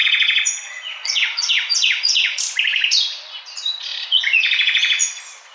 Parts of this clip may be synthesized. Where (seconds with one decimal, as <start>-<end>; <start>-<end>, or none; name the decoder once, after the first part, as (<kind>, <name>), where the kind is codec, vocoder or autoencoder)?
0.0-2.4 (vocoder, Vocos); 3.9-5.1